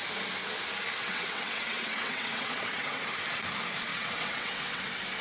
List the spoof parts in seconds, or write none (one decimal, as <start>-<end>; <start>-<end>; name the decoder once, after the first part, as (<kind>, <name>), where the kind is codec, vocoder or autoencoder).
1.0-3.1 (vocoder, WaveNeXt); 3.9-4.8